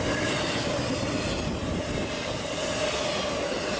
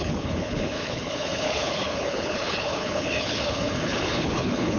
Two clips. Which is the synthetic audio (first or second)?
second